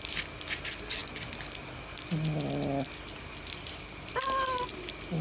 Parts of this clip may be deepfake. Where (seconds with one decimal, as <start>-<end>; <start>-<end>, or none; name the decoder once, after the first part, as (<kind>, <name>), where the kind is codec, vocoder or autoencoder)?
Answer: none